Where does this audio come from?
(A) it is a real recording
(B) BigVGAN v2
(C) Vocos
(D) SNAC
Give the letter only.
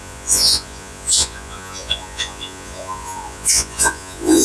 C